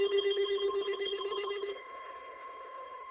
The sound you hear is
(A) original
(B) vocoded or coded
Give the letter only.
B